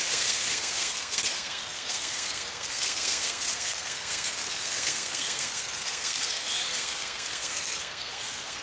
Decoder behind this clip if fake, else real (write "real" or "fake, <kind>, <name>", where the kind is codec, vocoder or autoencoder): fake, codec, SNAC